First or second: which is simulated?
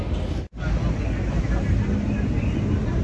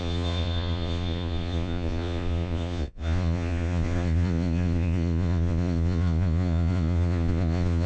second